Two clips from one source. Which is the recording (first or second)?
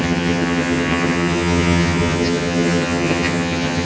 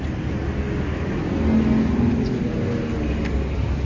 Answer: second